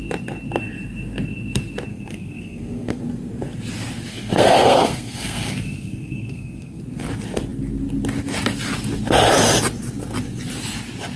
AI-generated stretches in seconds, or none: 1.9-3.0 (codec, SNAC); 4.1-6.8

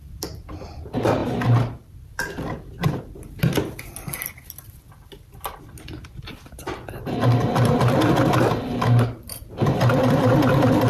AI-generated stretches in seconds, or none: none

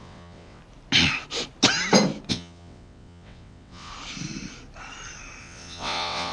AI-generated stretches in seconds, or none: 0.0-0.6 (vocoder, WaveNeXt); 2.3-3.9; 5.4-6.3